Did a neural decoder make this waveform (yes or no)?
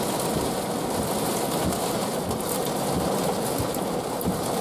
no